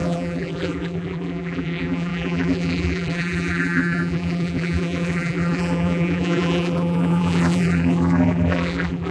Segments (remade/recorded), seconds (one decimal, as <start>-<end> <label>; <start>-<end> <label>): 0.0-9.1 remade